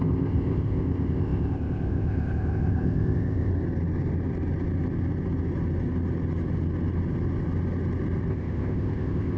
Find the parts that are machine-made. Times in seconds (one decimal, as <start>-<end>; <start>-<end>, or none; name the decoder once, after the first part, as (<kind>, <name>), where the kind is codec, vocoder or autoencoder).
0.0-3.5 (codec, ZipCodec); 8.3-9.4

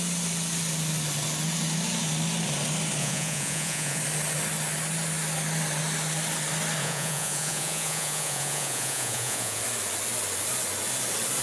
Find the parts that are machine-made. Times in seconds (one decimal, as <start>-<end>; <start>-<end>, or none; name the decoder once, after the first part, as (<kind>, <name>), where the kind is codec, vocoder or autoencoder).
3.0-4.0 (vocoder, Vocos); 6.8-9.6

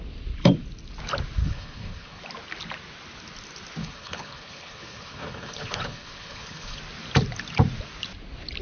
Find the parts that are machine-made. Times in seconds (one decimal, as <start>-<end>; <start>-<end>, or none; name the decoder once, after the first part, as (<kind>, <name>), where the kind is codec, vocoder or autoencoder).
1.4-2.2 (codec, HILCodec); 3.8-6.8

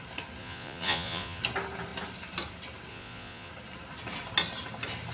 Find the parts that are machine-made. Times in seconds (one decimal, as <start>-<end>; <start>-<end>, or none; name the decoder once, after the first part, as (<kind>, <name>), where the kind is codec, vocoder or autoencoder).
0.4-1.4 (vocoder, Vocos); 2.9-3.5

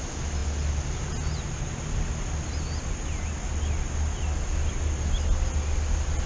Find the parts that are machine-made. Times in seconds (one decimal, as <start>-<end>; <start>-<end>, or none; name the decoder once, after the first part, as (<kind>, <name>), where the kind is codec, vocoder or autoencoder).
none

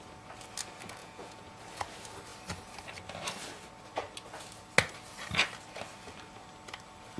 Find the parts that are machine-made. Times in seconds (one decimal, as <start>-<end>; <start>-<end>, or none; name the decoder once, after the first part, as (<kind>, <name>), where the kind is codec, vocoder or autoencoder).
1.0-1.6 (vocoder, Vocos)

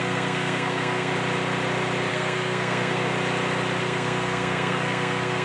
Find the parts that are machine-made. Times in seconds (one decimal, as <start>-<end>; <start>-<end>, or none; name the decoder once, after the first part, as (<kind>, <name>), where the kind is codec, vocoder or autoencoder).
0.0-1.1 (codec, SNAC); 2.1-3.1; 3.8-5.4